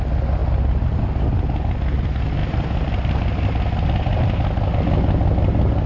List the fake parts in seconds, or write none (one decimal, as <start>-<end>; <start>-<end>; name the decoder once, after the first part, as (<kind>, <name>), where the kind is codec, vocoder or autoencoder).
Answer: none